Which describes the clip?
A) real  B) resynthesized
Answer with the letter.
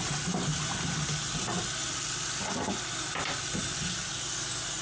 A